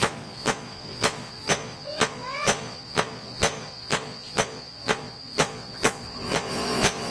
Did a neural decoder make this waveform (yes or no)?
yes